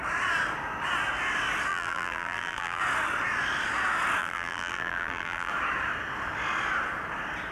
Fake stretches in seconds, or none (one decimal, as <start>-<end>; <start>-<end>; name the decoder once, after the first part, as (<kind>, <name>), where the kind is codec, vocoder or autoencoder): 1.7-2.8 (vocoder, BigVGAN v2); 4.2-5.5